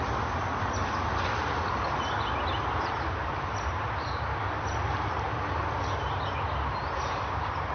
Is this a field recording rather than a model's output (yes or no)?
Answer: yes